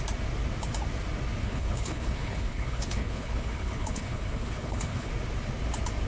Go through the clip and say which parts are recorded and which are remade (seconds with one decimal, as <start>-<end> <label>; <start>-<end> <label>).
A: 0.0-1.4 recorded; 1.4-5.1 remade; 5.1-6.1 recorded